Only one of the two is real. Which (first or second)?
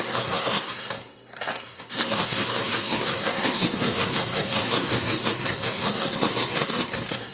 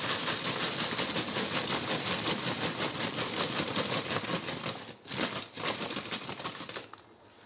second